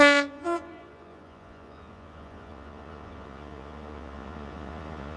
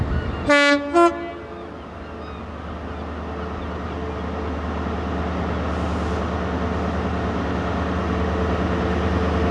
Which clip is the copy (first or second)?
first